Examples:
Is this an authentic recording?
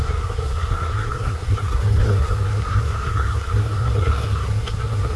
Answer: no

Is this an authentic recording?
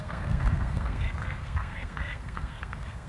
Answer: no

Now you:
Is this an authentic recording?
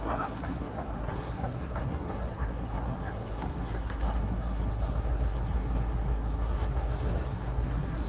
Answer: no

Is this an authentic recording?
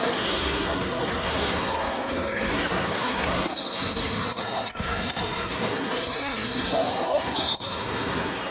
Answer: no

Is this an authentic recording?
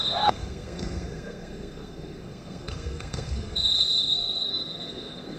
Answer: no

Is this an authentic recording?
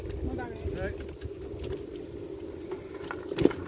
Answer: yes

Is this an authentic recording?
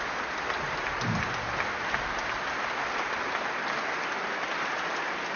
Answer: yes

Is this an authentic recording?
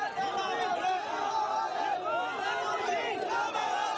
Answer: yes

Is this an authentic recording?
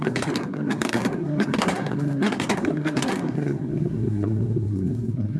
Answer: no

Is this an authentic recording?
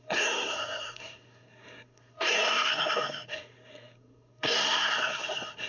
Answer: no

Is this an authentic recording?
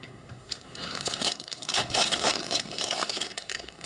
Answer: no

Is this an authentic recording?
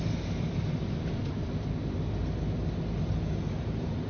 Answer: yes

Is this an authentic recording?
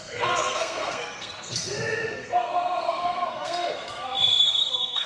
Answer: no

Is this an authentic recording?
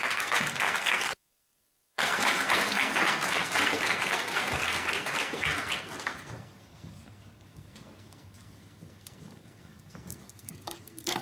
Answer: no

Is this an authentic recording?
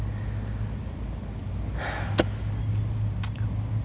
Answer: yes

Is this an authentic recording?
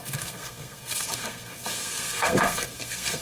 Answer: no